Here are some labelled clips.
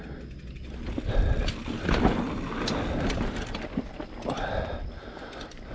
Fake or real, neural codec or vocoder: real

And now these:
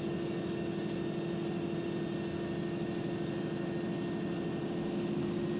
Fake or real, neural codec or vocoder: real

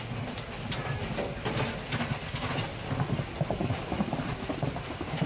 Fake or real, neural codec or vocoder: real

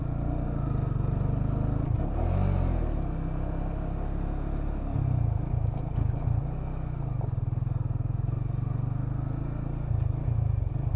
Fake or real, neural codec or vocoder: real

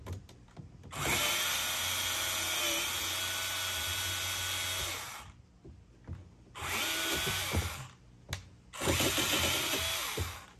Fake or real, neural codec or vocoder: real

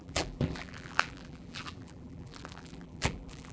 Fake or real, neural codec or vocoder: fake, vocoder, BigVGAN v2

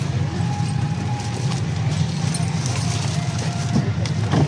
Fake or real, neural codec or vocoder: fake, vocoder, BigVGAN v2